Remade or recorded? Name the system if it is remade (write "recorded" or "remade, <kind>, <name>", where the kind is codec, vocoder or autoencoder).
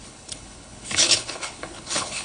remade, codec, HILCodec